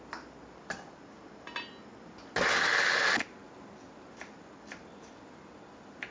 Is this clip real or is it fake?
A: real